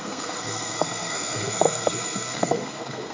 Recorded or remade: remade